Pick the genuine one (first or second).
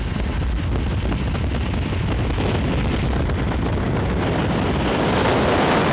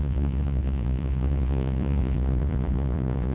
first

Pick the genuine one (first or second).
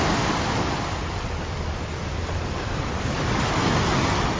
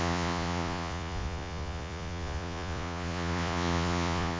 first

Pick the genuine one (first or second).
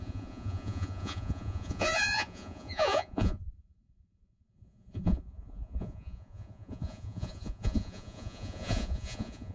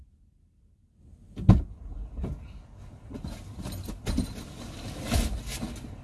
second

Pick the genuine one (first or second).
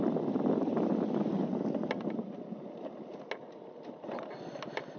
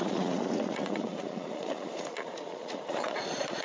first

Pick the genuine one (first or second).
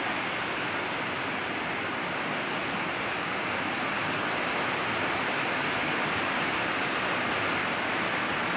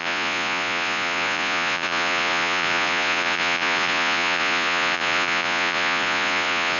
first